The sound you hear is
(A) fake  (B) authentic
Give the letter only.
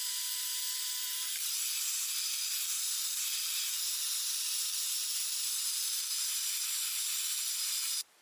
A